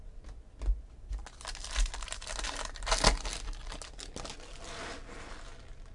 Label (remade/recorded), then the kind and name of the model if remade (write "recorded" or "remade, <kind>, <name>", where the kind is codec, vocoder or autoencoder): recorded